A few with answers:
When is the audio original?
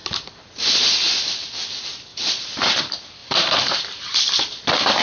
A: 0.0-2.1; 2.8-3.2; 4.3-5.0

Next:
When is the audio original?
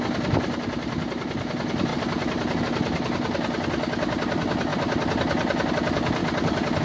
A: 0.0-6.8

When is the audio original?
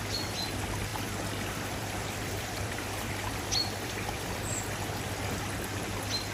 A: 0.0-0.9; 4.7-6.3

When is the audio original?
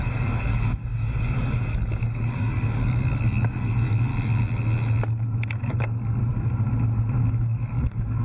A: 4.1-5.7; 6.2-7.3